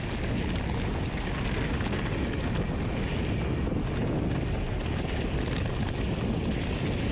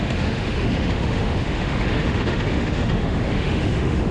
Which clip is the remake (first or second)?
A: second